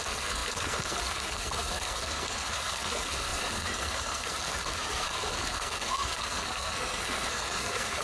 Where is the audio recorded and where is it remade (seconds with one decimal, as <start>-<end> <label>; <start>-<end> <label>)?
0.0-8.0 remade